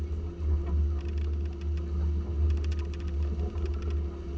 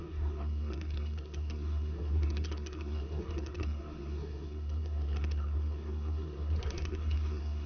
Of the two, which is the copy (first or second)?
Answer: second